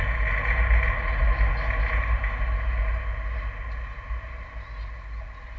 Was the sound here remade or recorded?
recorded